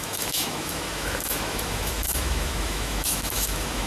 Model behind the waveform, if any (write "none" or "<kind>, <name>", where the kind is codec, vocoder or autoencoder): autoencoder, DAC-VAE